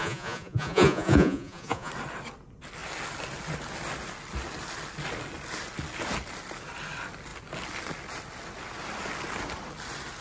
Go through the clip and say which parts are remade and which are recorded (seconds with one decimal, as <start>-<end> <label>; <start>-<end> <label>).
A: 0.0-1.9 remade; 1.9-10.2 recorded